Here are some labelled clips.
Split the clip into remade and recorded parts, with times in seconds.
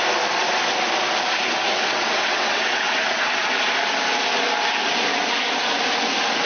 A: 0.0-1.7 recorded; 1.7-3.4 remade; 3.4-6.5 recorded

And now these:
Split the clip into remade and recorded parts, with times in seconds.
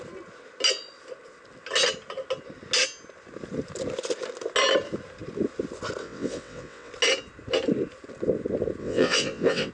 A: 0.0-6.0 recorded; 6.0-6.9 remade; 6.9-8.8 recorded; 8.8-9.7 remade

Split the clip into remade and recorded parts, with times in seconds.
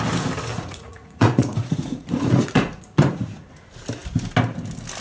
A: 0.0-0.5 recorded; 0.5-3.5 remade; 3.5-5.0 recorded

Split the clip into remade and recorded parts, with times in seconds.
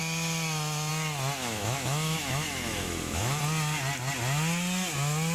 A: 0.0-1.4 recorded; 1.4-3.4 remade; 3.4-5.3 recorded